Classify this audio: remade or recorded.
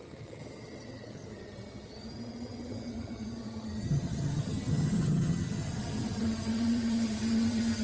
remade